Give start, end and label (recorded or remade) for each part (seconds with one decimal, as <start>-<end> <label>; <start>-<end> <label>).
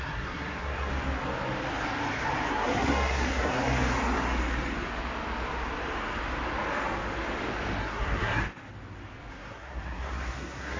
0.0-0.9 remade; 0.9-2.5 recorded; 2.5-3.6 remade; 3.6-7.8 recorded; 7.8-8.4 remade; 8.4-9.3 recorded; 9.3-10.8 remade